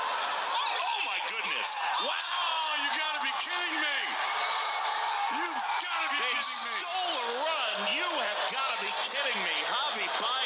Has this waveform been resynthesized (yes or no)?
no